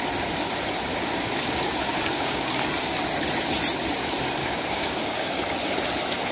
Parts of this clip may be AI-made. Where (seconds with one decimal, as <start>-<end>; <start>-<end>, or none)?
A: 0.9-2.5; 4.4-5.3